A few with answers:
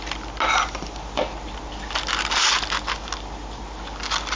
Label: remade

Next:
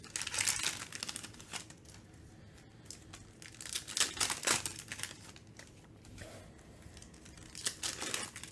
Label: recorded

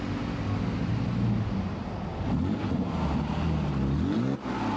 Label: recorded